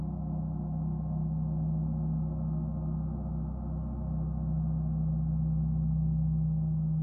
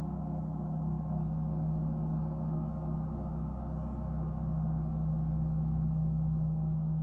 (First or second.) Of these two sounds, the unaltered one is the first